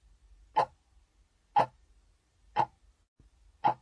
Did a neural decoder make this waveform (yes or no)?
no